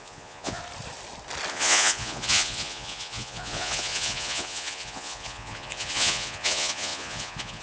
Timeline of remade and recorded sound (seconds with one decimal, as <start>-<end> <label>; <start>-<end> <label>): 0.0-0.6 remade; 0.6-1.5 recorded; 1.5-7.6 remade